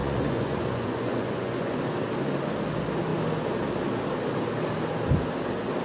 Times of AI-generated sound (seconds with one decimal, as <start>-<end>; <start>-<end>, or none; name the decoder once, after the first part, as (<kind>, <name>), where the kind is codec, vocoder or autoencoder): 0.0-1.8 (vocoder, Vocos)

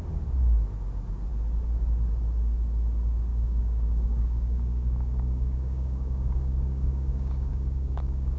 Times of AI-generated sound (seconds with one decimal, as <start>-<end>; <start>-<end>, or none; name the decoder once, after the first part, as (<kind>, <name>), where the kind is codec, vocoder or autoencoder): 3.3-8.4 (codec, DAC)

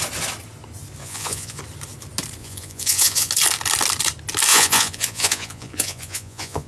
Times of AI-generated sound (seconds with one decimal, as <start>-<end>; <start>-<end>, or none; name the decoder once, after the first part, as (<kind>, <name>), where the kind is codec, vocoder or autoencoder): 1.0-1.6 (vocoder, Vocos); 2.4-3.3; 4.5-6.7

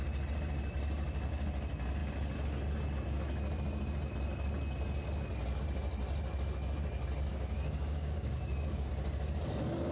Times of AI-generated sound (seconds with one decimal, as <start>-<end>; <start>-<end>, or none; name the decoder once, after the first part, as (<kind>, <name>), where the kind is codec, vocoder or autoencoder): 7.3-8.9 (codec, DAC)

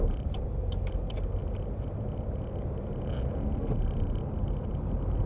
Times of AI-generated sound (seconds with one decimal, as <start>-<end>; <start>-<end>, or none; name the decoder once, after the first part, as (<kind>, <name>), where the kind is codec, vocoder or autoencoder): none

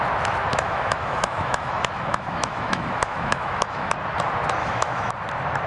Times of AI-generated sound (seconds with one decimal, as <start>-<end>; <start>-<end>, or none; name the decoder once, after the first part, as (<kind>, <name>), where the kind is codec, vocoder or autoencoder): 0.5-3.9 (autoencoder, DAC-VAE); 4.6-5.1

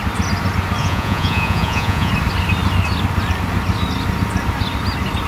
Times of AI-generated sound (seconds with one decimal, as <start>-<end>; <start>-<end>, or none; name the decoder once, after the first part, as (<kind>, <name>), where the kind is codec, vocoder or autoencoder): 0.8-2.1 (vocoder, Vocos)